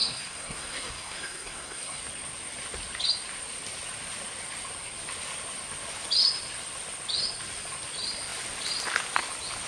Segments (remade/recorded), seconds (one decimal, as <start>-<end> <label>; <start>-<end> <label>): 0.0-2.0 remade; 2.0-9.7 recorded